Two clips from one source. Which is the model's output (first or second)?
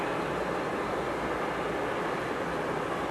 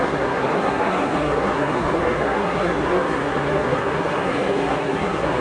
second